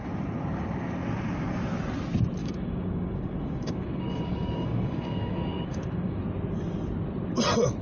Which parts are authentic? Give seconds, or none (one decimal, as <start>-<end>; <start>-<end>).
0.0-2.4; 6.2-7.8